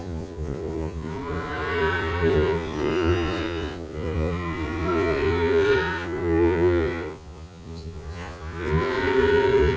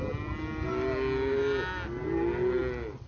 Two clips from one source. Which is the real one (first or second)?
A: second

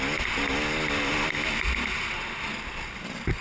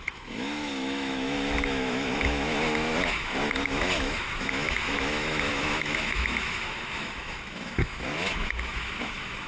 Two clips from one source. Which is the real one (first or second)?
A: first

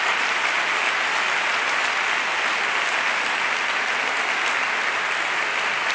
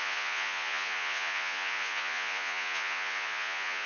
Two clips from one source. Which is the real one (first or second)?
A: first